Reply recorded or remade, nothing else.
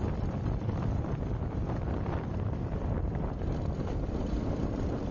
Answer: remade